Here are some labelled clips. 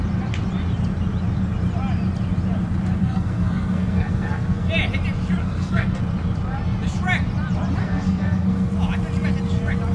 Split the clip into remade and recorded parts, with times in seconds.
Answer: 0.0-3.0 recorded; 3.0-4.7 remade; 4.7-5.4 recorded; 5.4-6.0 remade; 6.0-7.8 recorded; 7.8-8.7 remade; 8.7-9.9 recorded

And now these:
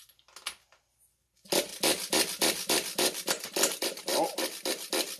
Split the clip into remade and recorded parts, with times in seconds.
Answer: 0.0-5.2 recorded

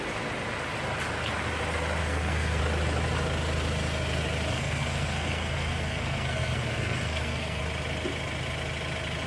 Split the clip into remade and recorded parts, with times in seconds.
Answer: 0.0-2.0 recorded; 2.0-2.6 remade; 2.6-4.5 recorded; 4.5-7.6 remade; 7.6-9.3 recorded

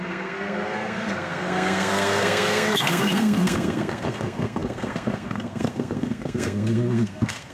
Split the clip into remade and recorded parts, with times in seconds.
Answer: 0.0-7.5 remade